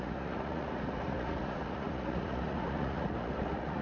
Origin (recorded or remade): remade